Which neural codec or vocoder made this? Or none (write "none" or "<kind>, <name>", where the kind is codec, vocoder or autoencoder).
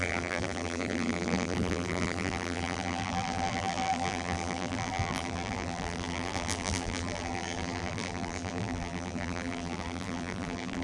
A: vocoder, BigVGAN v2